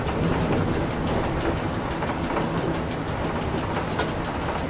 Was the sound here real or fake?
real